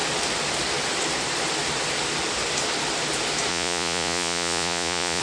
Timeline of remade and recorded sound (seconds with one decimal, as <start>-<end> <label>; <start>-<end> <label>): 0.0-3.5 recorded; 3.5-5.2 remade